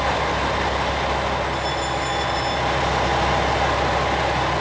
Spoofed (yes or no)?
no